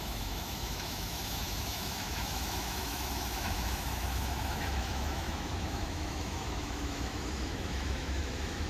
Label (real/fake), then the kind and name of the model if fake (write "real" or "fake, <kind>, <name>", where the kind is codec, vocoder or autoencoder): fake, autoencoder, DAC-VAE